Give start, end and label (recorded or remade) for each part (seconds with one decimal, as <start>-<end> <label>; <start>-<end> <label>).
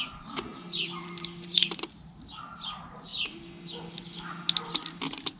0.0-0.5 recorded; 0.5-2.3 remade; 2.3-5.4 recorded